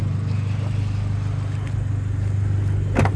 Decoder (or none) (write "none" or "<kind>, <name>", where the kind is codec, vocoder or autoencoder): none